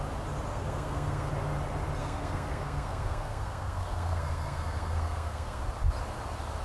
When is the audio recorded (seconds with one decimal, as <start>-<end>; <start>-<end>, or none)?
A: 0.0-0.5; 1.3-2.0; 5.6-6.6